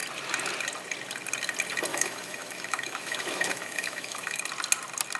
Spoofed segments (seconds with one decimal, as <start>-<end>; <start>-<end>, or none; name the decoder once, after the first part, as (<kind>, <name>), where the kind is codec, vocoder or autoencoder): 1.9-4.4 (autoencoder, DAC-VAE)